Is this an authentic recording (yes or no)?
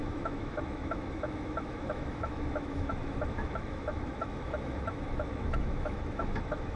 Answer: no